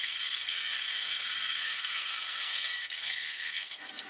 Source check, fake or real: fake